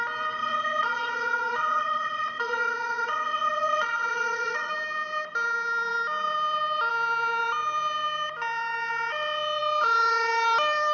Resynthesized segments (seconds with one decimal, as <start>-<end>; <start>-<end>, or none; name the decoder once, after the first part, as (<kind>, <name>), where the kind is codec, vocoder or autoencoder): 0.4-4.7 (vocoder, Vocos)